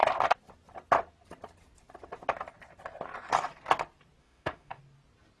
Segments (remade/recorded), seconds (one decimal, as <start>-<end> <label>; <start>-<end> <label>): 0.0-4.2 recorded; 4.2-4.8 remade; 4.8-5.4 recorded